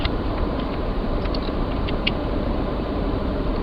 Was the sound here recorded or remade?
remade